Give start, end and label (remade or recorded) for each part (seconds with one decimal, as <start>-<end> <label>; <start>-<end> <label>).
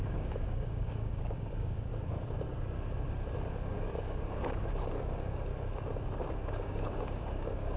0.0-1.9 remade; 1.9-3.5 recorded; 3.5-5.5 remade; 5.5-6.3 recorded; 6.3-7.8 remade